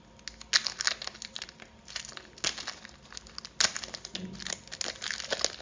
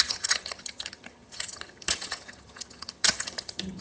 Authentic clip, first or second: first